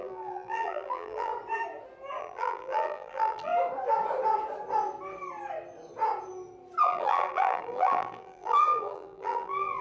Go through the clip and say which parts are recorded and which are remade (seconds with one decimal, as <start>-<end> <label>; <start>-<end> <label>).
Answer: 0.0-1.3 remade; 1.3-2.2 recorded; 2.2-3.5 remade; 3.5-6.8 recorded; 6.8-9.8 remade